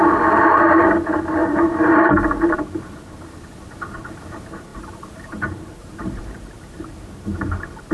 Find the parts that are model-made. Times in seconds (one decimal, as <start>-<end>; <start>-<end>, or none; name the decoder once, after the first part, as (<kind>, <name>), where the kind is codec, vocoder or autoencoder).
1.4-3.4 (vocoder, BigVGAN v2); 4.7-7.9